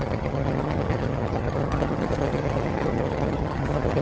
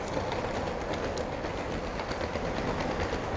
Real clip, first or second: second